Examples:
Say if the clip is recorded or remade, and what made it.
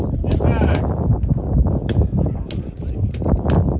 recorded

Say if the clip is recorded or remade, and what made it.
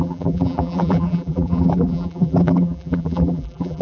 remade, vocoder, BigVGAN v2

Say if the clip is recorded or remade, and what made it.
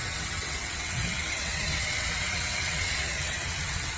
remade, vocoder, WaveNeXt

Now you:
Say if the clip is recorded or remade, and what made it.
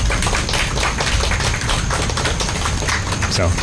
recorded